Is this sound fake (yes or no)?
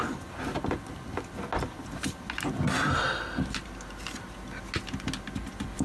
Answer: no